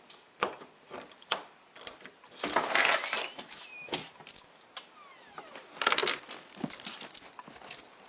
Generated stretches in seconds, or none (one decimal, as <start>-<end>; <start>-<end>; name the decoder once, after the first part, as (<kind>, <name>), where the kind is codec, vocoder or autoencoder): none